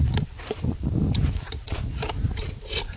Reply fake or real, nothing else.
fake